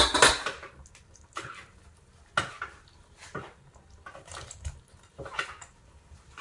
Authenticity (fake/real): real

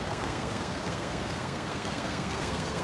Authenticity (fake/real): fake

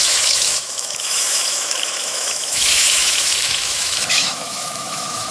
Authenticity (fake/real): fake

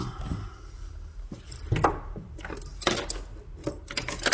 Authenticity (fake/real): real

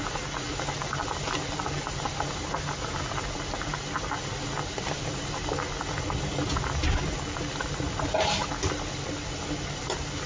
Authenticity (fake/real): real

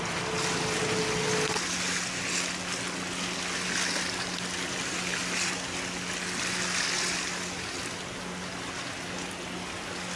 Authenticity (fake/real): real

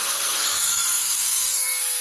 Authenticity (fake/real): fake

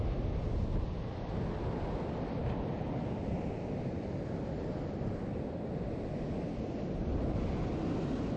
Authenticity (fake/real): real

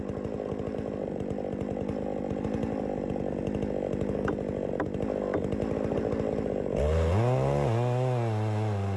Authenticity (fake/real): real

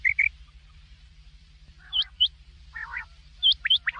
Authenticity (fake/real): fake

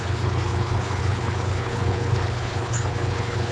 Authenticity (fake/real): fake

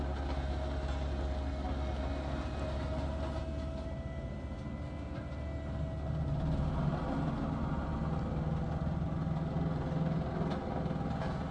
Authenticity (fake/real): real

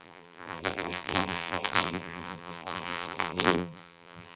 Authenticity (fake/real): fake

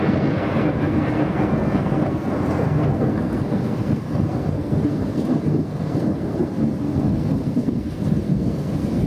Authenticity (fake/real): fake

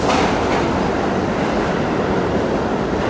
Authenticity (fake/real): real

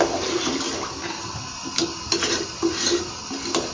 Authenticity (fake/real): real